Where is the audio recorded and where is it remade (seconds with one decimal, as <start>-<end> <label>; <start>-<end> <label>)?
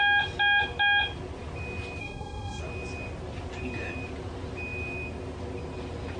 0.0-2.0 recorded; 2.0-2.6 remade; 2.6-6.2 recorded